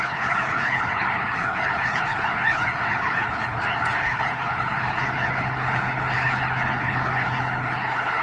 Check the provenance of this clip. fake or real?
fake